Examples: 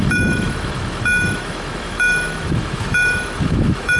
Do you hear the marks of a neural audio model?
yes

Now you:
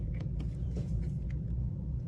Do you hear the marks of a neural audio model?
yes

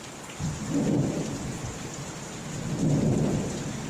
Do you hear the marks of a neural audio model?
yes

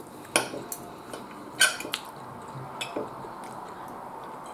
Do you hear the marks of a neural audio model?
no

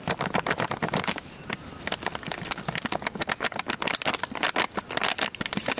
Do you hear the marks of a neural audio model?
no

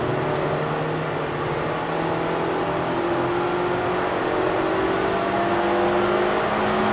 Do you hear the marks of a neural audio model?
no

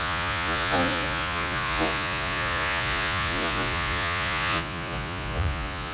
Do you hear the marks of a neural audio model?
yes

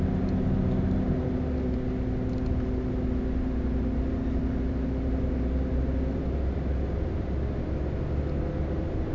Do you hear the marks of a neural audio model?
no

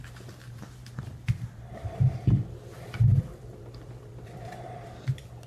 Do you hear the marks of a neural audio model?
yes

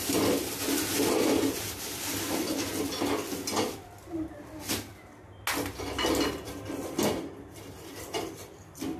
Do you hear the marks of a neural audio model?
no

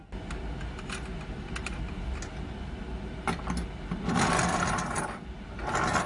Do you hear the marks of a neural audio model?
no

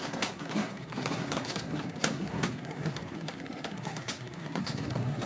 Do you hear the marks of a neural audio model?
yes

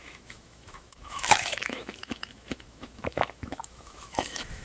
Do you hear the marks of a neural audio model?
yes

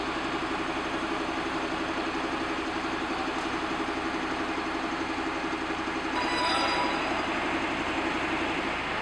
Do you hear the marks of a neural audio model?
no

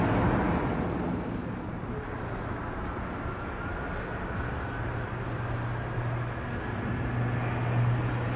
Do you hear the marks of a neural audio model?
no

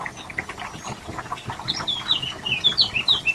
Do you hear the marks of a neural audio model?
no